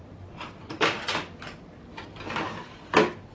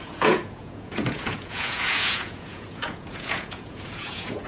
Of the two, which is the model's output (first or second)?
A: second